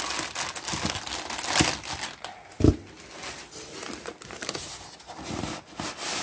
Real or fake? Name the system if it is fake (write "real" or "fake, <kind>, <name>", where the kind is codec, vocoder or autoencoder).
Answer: real